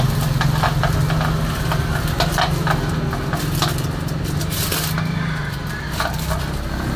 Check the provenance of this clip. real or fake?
real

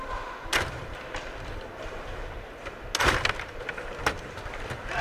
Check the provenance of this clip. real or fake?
real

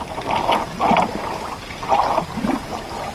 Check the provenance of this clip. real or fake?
real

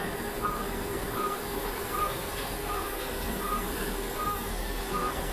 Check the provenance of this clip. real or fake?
fake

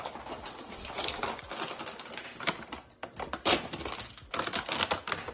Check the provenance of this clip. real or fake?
real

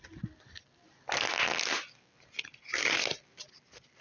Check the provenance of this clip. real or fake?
real